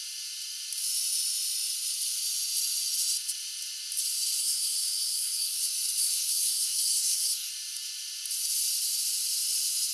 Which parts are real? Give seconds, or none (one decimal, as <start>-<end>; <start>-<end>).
0.0-4.4; 5.6-6.0; 7.5-9.9